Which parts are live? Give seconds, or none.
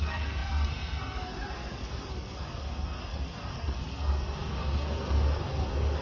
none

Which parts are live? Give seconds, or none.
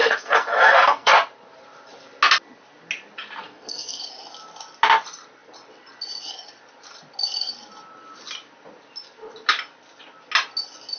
1.1-3.4; 4.0-11.0